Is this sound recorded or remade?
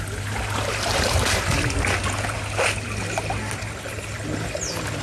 recorded